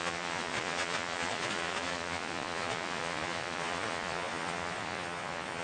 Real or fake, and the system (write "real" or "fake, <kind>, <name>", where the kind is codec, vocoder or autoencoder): fake, vocoder, Vocos